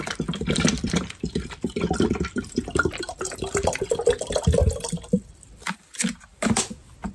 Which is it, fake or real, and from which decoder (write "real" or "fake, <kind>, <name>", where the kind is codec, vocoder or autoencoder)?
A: fake, vocoder, BigVGAN v2